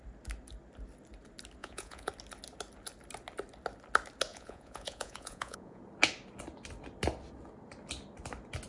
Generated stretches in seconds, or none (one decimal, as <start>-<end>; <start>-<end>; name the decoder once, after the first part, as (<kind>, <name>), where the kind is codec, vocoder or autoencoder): 1.6-2.1 (vocoder, Vocos); 4.3-5.8